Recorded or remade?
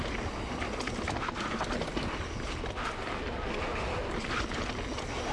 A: recorded